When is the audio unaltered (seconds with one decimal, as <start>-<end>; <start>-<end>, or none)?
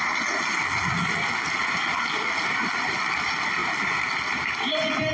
0.0-5.1